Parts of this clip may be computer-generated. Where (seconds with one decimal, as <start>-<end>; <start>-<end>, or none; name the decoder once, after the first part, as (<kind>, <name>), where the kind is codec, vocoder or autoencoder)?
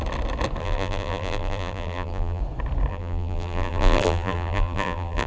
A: 0.6-2.4 (vocoder, BigVGAN v2); 2.9-5.3